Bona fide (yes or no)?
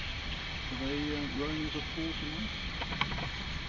yes